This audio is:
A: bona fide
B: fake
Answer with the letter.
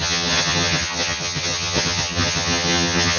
B